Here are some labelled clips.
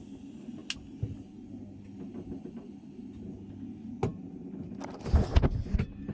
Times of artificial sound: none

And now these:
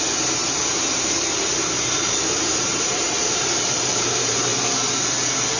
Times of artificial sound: 0.0-4.5 (vocoder, BigVGAN v2)

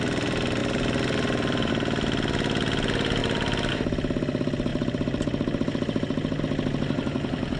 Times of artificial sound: 0.6-1.7 (vocoder, BigVGAN v2); 3.2-3.7; 4.7-6.4